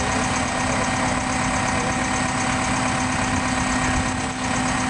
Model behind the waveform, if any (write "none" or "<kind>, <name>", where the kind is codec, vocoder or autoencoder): none